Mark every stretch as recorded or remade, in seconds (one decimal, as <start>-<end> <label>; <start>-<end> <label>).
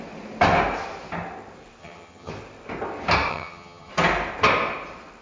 0.0-1.8 recorded; 1.8-2.3 remade; 2.3-3.3 recorded; 3.3-3.9 remade; 3.9-5.2 recorded